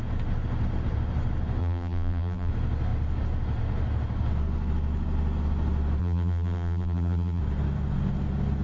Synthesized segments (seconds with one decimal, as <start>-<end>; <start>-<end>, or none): 1.6-2.5; 6.0-7.4